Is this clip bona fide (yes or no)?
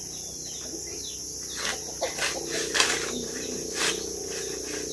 yes